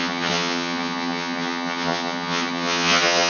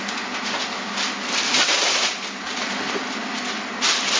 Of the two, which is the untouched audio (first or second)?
second